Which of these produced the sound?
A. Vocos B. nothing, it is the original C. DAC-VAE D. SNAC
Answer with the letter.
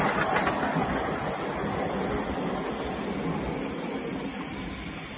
B